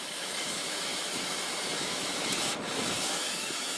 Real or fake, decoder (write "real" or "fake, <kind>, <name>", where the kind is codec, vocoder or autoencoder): fake, autoencoder, DAC-VAE